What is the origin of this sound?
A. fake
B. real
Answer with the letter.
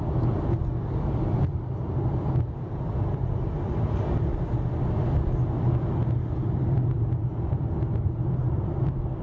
B